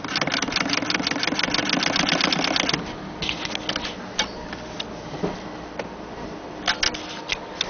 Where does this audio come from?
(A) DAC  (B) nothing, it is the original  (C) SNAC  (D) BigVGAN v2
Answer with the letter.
B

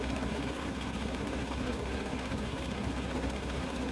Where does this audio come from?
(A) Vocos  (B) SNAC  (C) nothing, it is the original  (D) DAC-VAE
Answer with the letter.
B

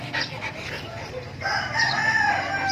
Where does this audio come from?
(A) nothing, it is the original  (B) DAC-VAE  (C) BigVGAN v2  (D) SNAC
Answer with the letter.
A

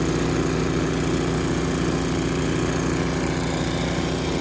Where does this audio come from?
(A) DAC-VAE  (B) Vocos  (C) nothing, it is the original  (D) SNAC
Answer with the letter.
C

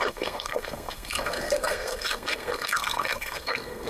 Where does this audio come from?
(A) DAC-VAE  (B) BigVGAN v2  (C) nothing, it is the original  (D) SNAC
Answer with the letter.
D